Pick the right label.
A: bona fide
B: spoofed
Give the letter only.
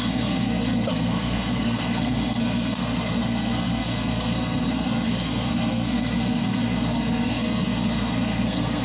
B